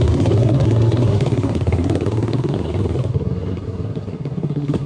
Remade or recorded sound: remade